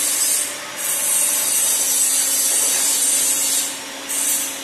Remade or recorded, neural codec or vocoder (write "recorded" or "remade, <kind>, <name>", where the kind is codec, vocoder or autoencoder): recorded